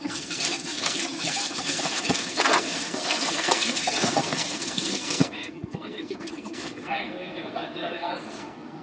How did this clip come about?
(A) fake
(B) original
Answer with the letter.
A